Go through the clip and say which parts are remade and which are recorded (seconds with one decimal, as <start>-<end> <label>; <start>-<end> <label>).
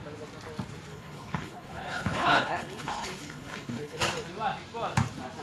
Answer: 0.0-0.9 recorded; 0.9-4.0 remade; 4.0-5.4 recorded